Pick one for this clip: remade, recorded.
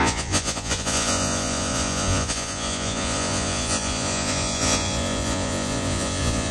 remade